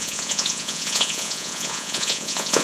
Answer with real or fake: fake